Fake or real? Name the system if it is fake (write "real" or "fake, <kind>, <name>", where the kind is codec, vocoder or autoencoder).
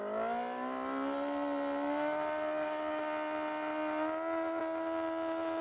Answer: real